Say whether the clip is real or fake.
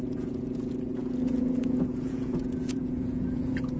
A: fake